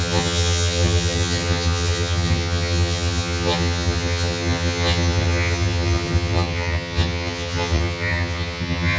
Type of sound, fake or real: fake